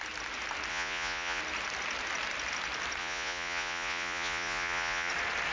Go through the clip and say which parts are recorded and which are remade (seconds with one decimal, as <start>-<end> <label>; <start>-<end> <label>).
0.0-0.7 recorded; 0.7-1.4 remade; 1.4-3.0 recorded; 3.0-5.1 remade; 5.1-5.5 recorded